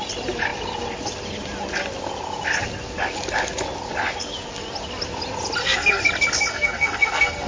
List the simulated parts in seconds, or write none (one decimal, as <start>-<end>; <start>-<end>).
5.6-6.1; 6.5-7.5